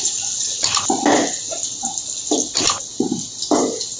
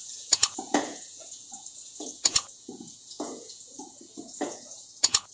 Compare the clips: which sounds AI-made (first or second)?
second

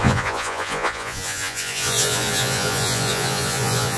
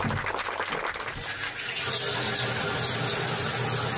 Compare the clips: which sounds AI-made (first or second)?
first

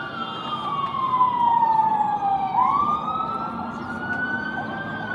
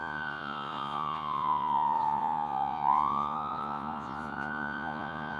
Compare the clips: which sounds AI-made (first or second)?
second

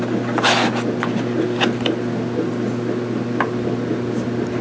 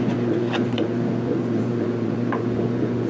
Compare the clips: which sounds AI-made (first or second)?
second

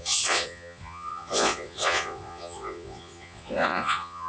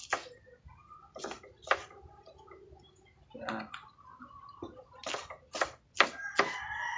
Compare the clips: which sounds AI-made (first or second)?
first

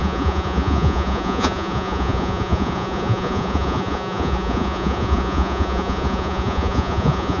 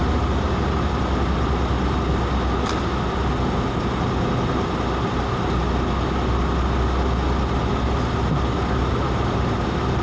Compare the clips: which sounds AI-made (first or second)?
first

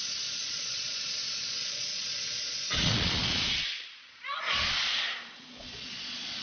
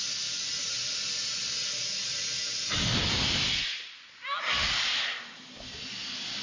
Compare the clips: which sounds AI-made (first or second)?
first